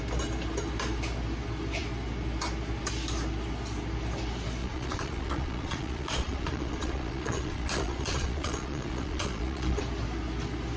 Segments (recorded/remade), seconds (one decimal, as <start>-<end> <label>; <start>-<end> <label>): 0.0-4.6 recorded; 4.6-9.8 remade; 9.8-10.8 recorded